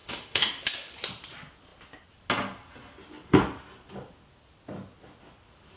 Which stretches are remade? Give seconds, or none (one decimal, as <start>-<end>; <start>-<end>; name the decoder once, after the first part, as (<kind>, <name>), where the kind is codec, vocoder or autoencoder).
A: 0.0-0.5 (autoencoder, DAC-VAE)